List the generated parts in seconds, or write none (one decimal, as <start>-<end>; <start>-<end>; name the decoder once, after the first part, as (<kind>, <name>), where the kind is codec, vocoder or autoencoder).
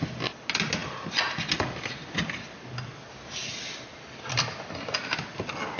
none